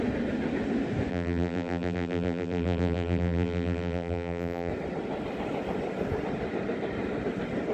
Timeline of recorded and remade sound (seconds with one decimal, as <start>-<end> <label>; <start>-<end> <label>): 0.0-1.1 recorded; 1.1-4.7 remade; 4.7-7.7 recorded